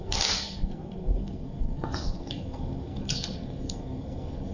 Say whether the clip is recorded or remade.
remade